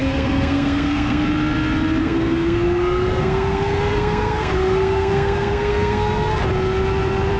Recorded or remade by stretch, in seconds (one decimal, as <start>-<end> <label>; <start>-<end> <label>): 0.0-1.2 remade; 1.2-2.0 recorded; 2.0-6.4 remade; 6.4-7.4 recorded